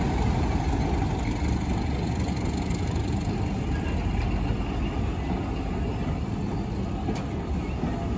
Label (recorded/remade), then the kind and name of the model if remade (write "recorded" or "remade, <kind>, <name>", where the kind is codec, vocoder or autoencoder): recorded